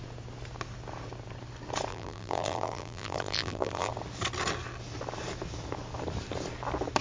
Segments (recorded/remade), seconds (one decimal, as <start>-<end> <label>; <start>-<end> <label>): 0.0-1.9 recorded; 1.9-3.9 remade; 3.9-7.0 recorded